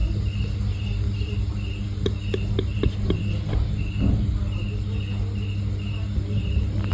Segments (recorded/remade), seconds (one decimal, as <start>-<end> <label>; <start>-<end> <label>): 0.0-6.9 recorded